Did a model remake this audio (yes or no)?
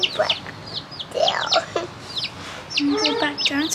no